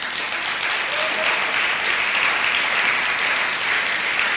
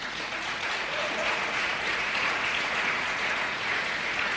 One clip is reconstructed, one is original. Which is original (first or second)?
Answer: first